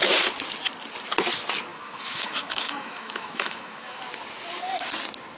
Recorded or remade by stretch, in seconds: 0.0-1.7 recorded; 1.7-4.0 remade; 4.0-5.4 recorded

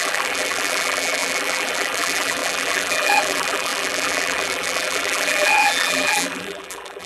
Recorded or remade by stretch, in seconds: 0.0-7.1 remade

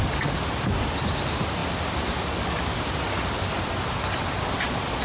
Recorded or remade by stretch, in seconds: 0.0-5.0 recorded

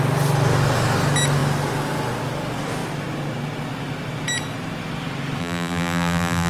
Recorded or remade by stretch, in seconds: 0.0-5.4 recorded; 5.4-6.5 remade

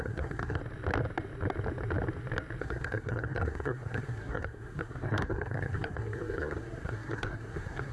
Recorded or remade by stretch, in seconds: 0.0-0.6 remade; 0.6-2.6 recorded; 2.6-7.9 remade